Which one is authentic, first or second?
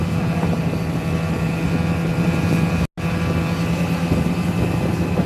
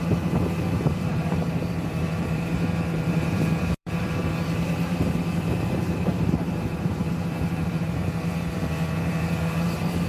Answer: first